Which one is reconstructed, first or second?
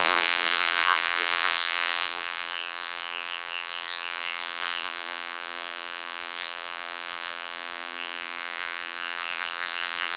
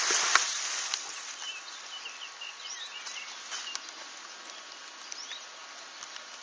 first